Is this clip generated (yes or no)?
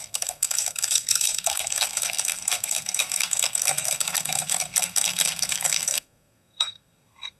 yes